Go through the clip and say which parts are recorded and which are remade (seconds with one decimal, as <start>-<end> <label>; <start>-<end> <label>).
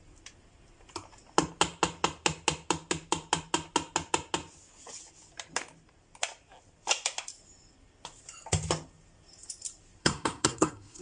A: 0.0-10.0 recorded; 10.0-11.0 remade